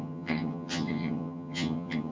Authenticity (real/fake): fake